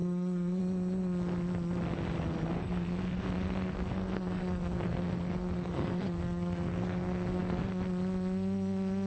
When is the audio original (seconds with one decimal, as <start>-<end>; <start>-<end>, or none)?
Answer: 0.6-2.6; 7.6-9.1